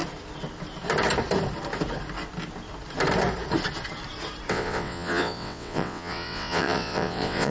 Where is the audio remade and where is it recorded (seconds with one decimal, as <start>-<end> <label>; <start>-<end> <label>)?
0.0-4.5 recorded; 4.5-7.5 remade